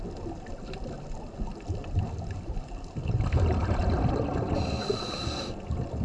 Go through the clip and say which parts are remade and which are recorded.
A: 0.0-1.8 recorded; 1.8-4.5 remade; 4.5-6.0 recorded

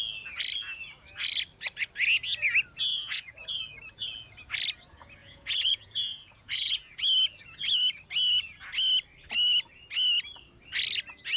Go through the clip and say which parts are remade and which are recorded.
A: 0.0-2.9 recorded; 2.9-3.6 remade; 3.6-5.2 recorded; 5.2-7.0 remade; 7.0-11.4 recorded

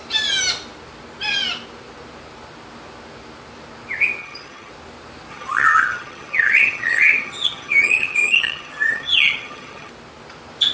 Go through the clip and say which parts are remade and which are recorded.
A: 0.0-4.2 recorded; 4.2-4.7 remade; 4.7-5.3 recorded; 5.3-9.9 remade; 9.9-10.7 recorded

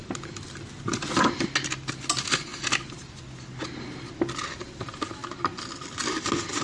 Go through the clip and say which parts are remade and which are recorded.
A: 0.0-6.6 recorded

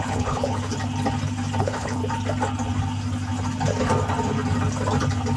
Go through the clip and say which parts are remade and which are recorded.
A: 0.0-0.7 remade; 0.7-1.6 recorded; 1.6-2.0 remade; 2.0-5.4 recorded

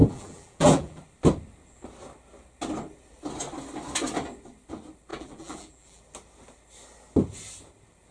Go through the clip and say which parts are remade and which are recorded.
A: 0.0-1.0 remade; 1.0-5.1 recorded; 5.1-6.0 remade; 6.0-8.1 recorded

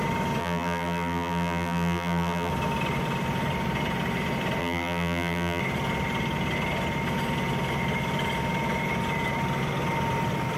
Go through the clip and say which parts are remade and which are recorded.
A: 0.0-0.4 recorded; 0.4-2.5 remade; 2.5-4.6 recorded; 4.6-5.6 remade; 5.6-10.6 recorded

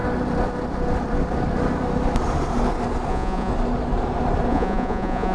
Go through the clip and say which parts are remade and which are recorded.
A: 0.0-3.1 recorded; 3.1-3.5 remade; 3.5-4.5 recorded; 4.5-5.3 remade